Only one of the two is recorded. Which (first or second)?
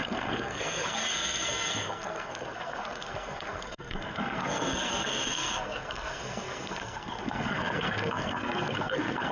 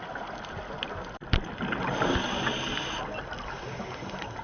second